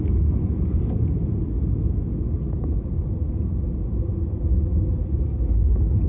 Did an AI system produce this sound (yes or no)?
no